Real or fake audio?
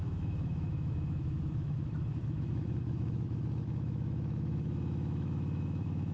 fake